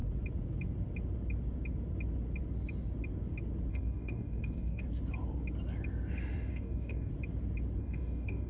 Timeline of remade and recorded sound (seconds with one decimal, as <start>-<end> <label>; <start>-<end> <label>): 0.0-3.7 recorded; 3.7-4.8 remade; 4.8-6.5 recorded; 6.5-7.1 remade; 7.1-7.8 recorded; 7.8-8.5 remade